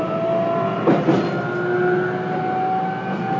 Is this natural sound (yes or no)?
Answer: yes